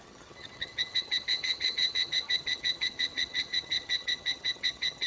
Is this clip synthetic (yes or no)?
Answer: yes